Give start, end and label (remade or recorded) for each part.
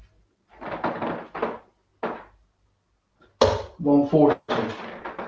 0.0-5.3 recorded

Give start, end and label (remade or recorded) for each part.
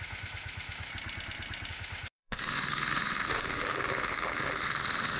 0.0-0.9 remade; 0.9-1.7 recorded; 1.7-5.2 remade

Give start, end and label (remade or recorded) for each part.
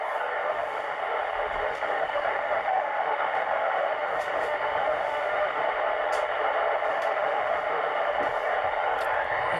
0.0-0.4 recorded; 0.4-1.0 remade; 1.0-1.7 recorded; 1.7-5.7 remade; 5.7-6.9 recorded; 6.9-8.2 remade; 8.2-9.6 recorded